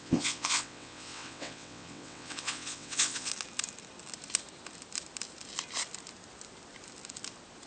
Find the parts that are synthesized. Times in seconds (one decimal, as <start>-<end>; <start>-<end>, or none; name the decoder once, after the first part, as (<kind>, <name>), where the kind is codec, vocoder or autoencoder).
0.0-3.3 (vocoder, WaveNeXt)